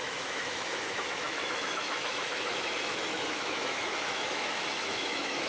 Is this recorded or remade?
remade